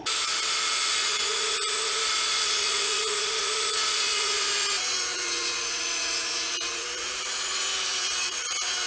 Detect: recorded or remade remade